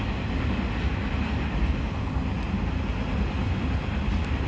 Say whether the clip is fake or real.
real